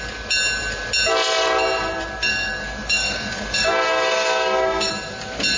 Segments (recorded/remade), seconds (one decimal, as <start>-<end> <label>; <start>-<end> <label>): 0.0-2.3 recorded; 2.3-4.9 remade; 4.9-5.6 recorded